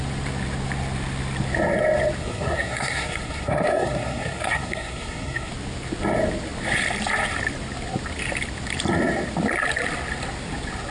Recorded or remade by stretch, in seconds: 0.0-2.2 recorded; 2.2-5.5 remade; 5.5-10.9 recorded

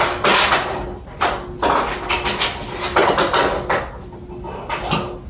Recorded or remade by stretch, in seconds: 0.0-5.3 recorded